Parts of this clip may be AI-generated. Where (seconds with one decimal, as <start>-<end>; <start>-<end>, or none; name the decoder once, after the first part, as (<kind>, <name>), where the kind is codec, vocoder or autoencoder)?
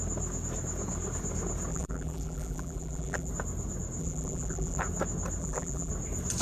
1.7-3.3 (vocoder, BigVGAN v2); 4.0-4.8; 5.4-5.9